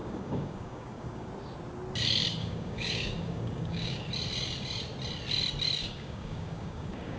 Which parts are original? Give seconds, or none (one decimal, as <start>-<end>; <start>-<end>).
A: 1.3-2.4; 4.1-5.8

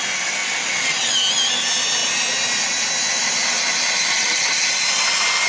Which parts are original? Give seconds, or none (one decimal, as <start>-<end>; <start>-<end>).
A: 0.0-4.1; 4.7-5.5

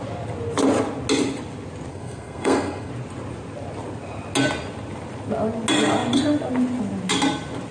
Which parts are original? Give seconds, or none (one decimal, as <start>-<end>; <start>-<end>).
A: 0.0-1.9; 2.9-7.7

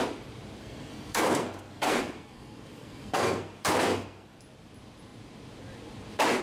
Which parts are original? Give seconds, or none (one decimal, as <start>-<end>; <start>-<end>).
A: 0.0-0.6; 4.4-6.4

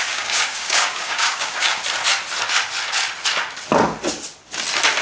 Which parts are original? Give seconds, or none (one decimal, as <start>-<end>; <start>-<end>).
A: 1.8-5.0